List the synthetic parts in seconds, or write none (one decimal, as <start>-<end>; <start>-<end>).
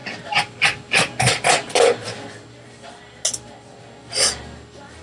none